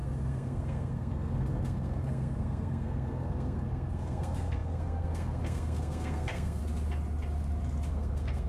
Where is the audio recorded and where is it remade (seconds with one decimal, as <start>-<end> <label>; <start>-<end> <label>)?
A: 0.0-6.6 remade; 6.6-7.9 recorded; 7.9-8.5 remade